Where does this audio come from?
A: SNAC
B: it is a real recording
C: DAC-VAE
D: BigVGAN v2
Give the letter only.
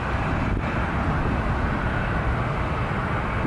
B